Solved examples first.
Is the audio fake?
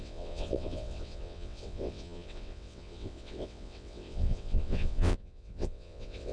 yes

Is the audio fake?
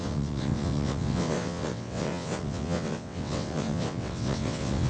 yes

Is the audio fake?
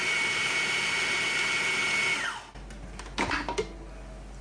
no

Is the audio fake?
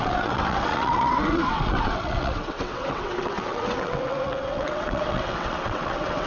yes